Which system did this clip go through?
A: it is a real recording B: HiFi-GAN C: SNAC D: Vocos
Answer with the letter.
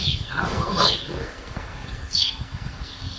C